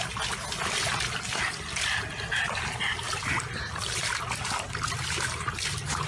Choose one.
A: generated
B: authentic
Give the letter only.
B